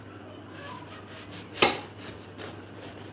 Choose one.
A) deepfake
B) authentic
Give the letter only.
B